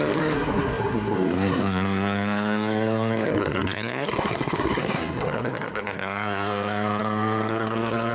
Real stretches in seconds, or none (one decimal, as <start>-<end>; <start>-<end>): none